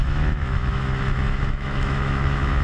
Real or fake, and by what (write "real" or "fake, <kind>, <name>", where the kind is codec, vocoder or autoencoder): fake, autoencoder, DAC-VAE